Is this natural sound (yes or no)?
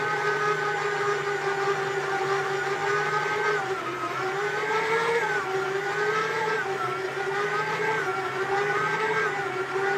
no